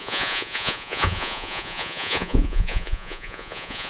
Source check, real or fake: fake